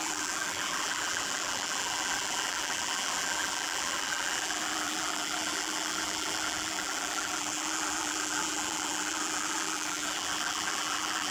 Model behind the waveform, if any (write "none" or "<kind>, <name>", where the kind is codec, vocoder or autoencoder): vocoder, BigVGAN v2